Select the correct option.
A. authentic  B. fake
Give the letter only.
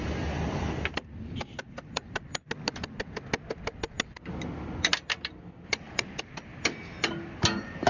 A